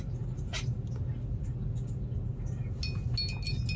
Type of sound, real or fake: real